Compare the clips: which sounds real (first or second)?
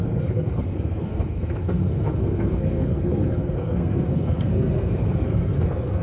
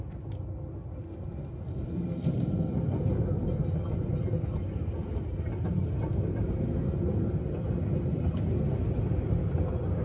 second